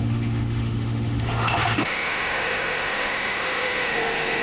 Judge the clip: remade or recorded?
remade